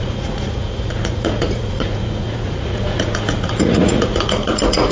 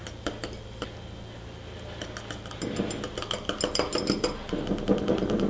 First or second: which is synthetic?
first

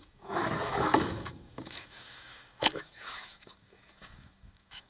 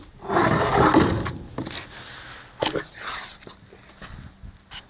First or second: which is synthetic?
first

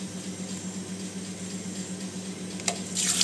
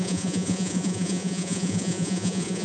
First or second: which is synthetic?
second